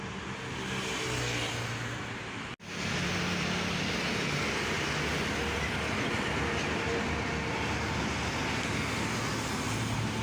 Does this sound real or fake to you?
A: real